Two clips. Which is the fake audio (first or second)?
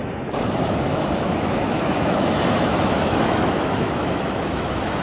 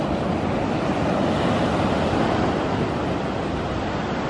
first